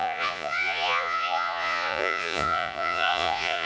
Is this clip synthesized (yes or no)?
yes